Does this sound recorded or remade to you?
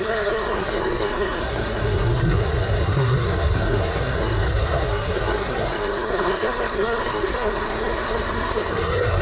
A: remade